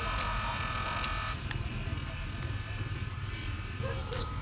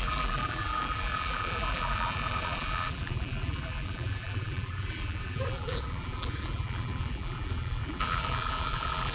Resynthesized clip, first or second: second